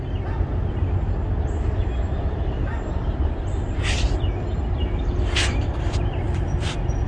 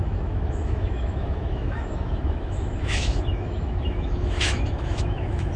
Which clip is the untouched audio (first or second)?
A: first